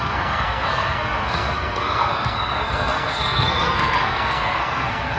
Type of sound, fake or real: fake